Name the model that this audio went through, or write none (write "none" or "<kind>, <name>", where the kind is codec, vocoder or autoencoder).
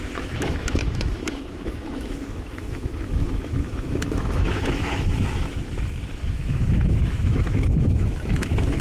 autoencoder, DAC-VAE